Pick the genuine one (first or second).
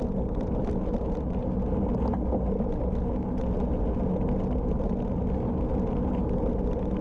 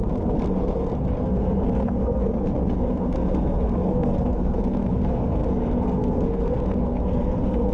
first